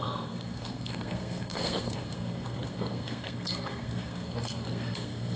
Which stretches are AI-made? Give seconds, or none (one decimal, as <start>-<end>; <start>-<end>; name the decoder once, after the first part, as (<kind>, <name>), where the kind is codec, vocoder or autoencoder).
0.0-5.4 (codec, SNAC)